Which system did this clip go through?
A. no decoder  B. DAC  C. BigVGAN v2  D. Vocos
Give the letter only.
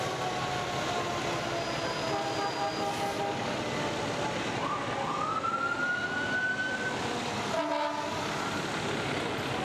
A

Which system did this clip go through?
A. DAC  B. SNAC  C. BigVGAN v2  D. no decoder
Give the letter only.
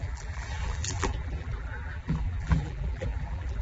C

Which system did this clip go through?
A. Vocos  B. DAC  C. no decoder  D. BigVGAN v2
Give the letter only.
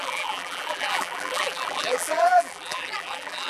D